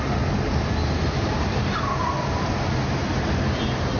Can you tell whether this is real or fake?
real